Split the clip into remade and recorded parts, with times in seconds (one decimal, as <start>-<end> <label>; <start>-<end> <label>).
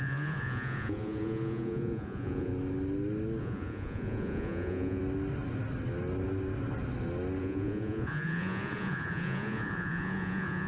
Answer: 0.0-2.5 remade; 2.5-3.4 recorded; 3.4-5.0 remade; 5.0-7.4 recorded; 7.4-10.7 remade